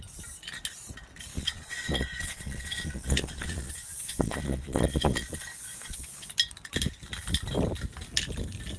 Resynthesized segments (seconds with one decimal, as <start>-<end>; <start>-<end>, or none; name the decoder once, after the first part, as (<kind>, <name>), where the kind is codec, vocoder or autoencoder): 1.3-6.3 (vocoder, Vocos)